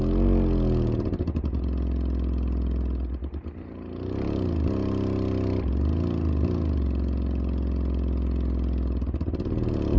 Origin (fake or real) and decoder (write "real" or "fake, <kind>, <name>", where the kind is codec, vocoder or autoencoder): real